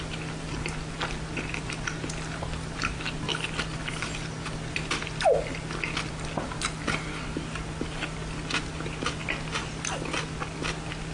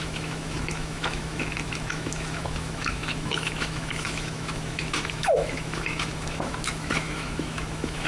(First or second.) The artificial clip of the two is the second